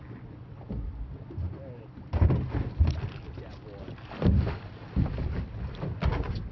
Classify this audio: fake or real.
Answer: real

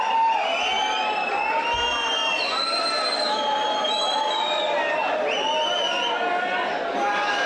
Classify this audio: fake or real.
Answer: real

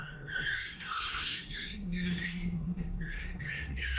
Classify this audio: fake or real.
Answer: fake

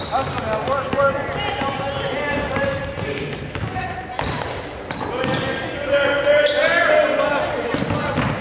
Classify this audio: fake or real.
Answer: real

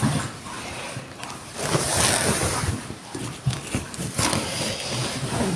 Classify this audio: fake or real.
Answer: real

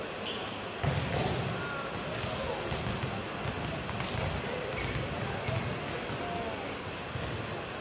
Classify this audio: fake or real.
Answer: real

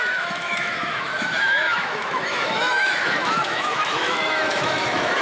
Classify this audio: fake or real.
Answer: fake